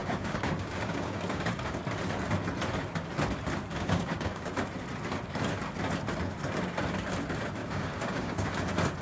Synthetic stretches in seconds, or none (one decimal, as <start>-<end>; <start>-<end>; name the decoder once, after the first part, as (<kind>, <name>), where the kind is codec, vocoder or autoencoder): 0.0-1.8 (codec, DAC); 3.7-4.5; 7.6-8.5